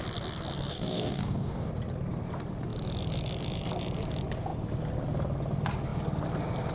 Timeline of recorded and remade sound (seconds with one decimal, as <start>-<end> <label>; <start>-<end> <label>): 0.0-0.7 recorded; 0.7-1.7 remade; 1.7-6.7 recorded